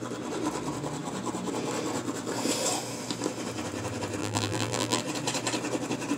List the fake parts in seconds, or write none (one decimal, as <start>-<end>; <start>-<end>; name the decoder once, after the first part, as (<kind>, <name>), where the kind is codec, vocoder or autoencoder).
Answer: 4.2-5.0 (vocoder, BigVGAN v2)